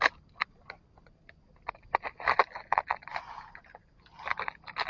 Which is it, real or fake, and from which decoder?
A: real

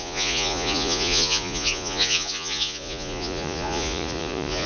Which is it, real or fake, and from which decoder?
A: fake, vocoder, Vocos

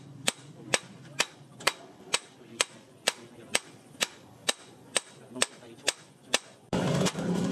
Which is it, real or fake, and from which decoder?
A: fake, vocoder, Vocos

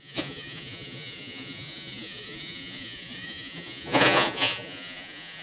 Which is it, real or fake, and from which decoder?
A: fake, vocoder, Vocos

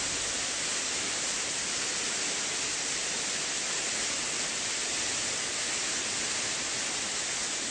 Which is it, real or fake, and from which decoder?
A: real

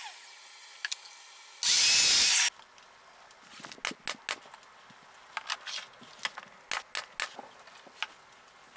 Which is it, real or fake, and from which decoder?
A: real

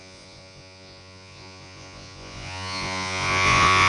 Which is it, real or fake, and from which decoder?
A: fake, vocoder, Vocos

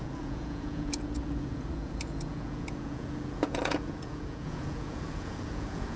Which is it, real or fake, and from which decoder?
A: fake, vocoder, Vocos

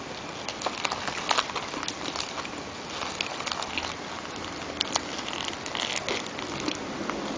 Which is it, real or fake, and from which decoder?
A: real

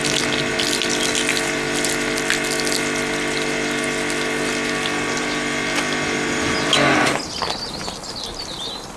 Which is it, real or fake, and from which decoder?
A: real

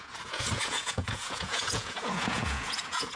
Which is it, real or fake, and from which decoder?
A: fake, vocoder, Vocos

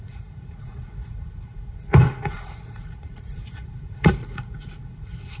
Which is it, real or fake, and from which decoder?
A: fake, vocoder, Vocos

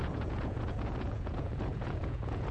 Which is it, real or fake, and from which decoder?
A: fake, vocoder, Vocos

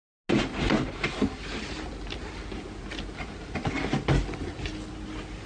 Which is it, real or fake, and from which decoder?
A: real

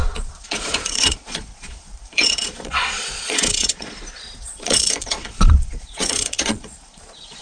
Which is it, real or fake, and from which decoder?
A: fake, vocoder, Vocos